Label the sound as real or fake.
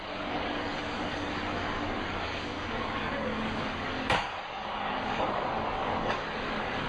fake